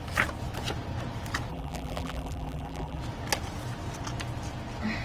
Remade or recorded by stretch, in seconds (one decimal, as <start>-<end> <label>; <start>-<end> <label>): 0.0-1.5 recorded; 1.5-3.0 remade; 3.0-5.0 recorded